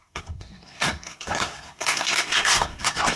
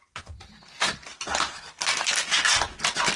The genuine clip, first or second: second